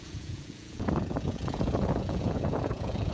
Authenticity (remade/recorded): remade